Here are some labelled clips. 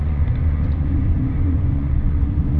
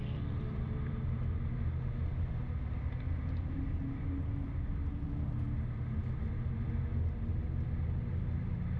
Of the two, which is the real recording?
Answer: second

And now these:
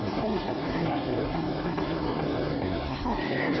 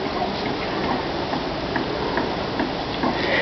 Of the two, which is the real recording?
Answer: second